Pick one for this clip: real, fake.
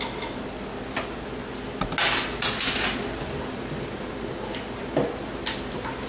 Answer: real